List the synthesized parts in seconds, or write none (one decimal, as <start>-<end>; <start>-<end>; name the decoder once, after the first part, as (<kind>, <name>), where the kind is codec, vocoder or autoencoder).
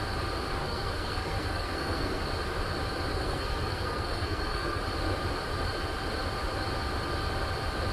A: 0.6-2.2 (codec, SNAC); 3.1-4.8